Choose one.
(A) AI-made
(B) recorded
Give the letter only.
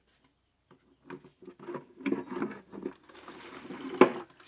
B